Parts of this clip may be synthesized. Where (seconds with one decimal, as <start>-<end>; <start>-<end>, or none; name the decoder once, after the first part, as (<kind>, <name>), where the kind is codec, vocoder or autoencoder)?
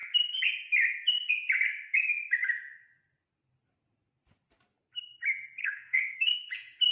5.6-6.5 (codec, SNAC)